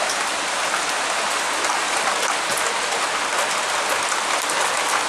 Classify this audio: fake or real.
real